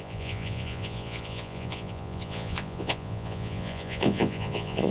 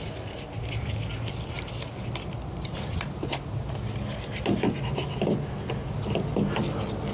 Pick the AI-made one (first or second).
first